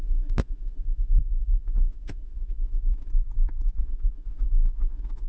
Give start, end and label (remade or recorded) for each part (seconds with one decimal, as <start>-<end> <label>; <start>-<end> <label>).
0.0-3.1 remade; 3.1-3.8 recorded; 3.8-5.3 remade